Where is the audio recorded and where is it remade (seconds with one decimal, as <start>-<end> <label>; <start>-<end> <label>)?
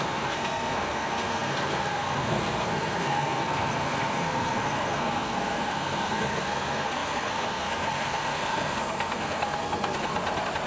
0.0-10.1 remade; 10.1-10.7 recorded